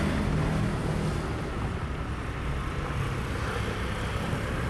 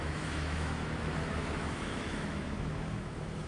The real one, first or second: first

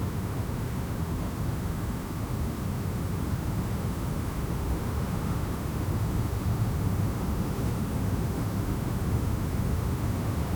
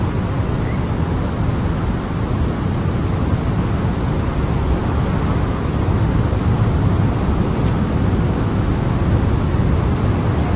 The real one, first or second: second